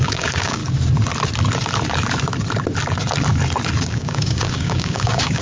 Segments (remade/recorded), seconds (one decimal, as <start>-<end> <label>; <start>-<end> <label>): 0.0-0.6 remade; 0.6-3.8 recorded; 3.8-5.4 remade